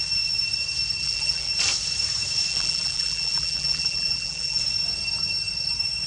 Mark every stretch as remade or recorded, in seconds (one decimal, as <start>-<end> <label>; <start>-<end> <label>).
0.0-1.0 recorded; 1.0-1.5 remade; 1.5-2.5 recorded; 2.5-4.6 remade; 4.6-6.1 recorded